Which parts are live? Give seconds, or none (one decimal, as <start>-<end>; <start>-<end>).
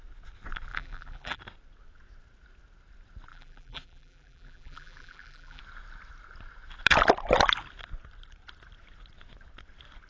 0.0-0.7; 1.4-3.3; 5.6-10.1